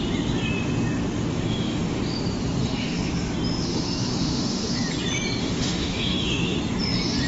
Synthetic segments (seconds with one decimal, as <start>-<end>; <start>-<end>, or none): 1.3-2.0; 2.6-3.1; 3.7-4.8; 5.4-6.6